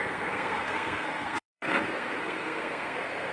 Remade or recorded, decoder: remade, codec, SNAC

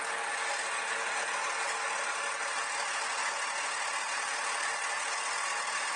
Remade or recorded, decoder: recorded